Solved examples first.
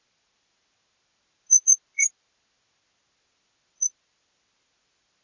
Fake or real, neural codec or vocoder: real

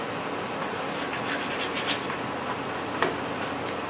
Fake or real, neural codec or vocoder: real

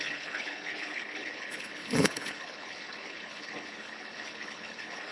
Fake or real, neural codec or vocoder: fake, codec, HILCodec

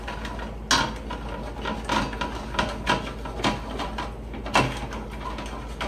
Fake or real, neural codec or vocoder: real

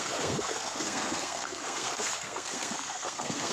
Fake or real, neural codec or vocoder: fake, codec, SNAC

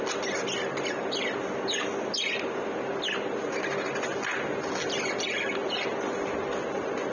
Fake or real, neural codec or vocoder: real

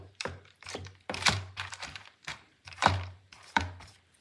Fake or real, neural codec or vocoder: fake, vocoder, BigVGAN v2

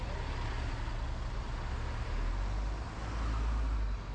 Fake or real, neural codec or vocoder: real